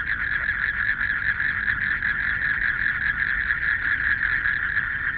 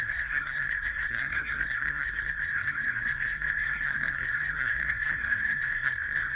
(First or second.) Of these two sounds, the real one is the first